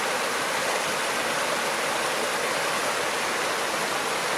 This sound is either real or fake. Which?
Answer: real